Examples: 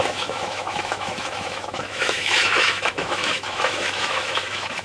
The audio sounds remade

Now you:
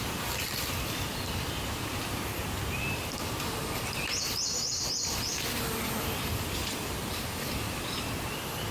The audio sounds recorded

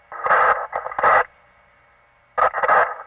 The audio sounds recorded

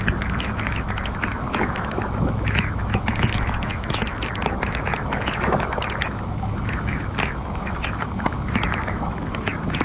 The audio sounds remade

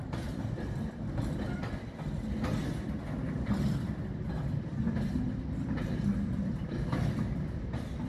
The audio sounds recorded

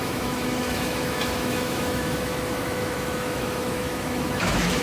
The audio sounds remade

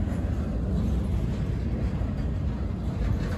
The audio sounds recorded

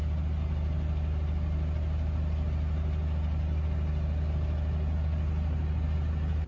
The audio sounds recorded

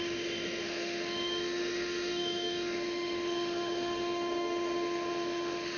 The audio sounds remade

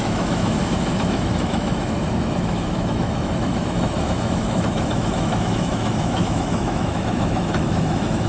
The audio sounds remade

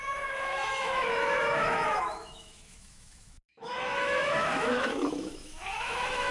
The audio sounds remade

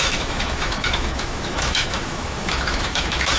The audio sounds remade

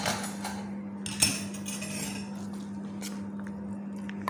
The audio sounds recorded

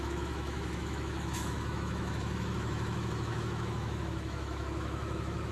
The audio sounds remade